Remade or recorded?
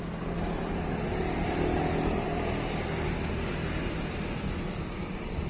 recorded